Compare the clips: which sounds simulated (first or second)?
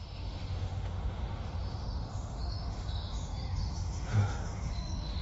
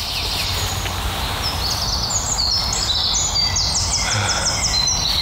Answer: first